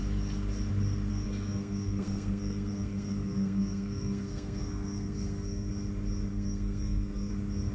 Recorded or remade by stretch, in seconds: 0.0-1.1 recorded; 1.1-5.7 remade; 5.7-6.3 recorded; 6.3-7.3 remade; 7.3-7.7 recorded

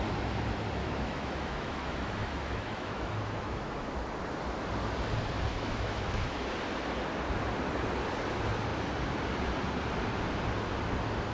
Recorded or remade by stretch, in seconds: 0.0-0.8 recorded; 0.8-3.9 remade; 3.9-5.5 recorded; 5.5-6.4 remade; 6.4-11.3 recorded